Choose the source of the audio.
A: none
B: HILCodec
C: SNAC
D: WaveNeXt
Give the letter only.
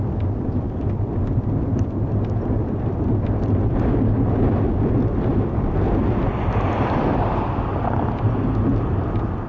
A